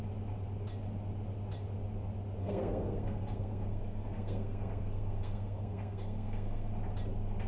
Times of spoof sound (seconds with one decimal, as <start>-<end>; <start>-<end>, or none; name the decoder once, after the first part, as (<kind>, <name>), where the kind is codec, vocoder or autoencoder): 2.4-6.7 (codec, SNAC)